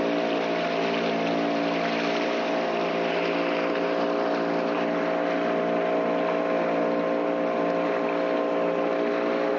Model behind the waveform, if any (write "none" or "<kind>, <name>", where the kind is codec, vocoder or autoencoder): none